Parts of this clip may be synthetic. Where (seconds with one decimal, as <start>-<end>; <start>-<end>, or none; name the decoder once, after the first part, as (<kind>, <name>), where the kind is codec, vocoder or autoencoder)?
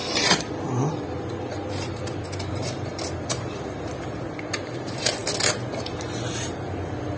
0.0-5.2 (vocoder, BigVGAN v2); 6.3-7.2